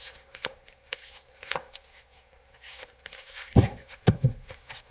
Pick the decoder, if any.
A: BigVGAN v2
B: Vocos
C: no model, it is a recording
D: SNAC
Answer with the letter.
D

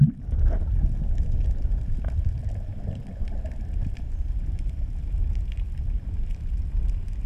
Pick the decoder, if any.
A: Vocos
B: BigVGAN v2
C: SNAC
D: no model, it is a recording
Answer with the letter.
D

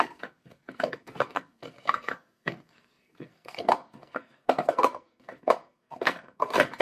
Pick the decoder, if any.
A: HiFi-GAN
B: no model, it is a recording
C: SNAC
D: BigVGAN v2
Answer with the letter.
C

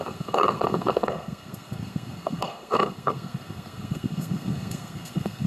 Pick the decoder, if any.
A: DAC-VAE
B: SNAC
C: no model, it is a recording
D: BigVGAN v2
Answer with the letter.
B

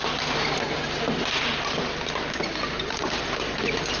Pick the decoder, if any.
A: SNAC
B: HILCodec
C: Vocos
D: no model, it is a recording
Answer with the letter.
D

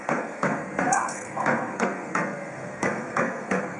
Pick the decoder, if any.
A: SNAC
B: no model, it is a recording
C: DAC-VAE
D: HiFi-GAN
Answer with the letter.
A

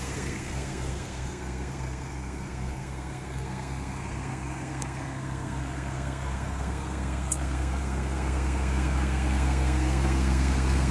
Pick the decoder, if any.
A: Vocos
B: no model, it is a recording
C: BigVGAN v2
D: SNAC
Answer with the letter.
D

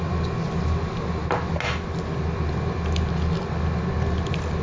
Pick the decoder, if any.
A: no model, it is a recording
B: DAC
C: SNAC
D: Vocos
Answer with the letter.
A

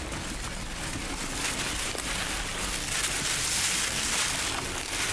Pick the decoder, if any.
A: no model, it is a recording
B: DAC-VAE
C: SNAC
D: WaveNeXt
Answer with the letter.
A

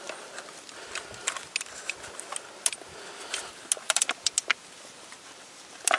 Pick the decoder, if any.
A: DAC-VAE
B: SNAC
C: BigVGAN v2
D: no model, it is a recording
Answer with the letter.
D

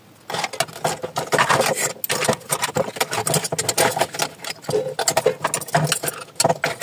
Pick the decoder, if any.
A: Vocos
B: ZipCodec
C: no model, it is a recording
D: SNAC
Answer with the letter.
C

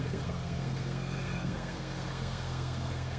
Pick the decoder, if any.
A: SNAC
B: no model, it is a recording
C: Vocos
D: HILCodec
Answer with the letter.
A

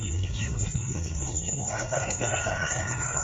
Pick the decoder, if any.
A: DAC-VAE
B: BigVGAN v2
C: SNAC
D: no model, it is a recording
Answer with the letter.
C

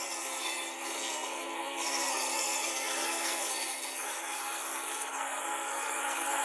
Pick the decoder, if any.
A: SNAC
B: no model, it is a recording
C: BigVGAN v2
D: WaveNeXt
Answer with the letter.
A